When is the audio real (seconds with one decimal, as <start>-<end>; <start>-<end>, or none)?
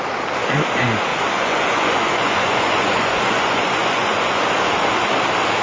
0.0-1.1; 4.5-5.6